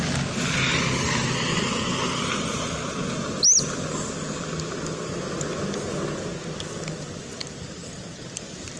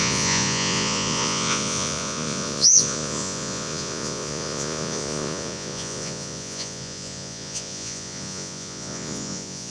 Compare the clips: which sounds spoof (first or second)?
second